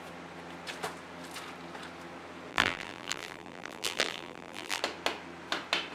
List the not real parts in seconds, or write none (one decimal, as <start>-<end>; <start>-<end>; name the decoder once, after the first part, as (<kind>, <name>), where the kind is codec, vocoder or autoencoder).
2.5-4.8 (vocoder, BigVGAN v2)